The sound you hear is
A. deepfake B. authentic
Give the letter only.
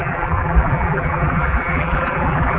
A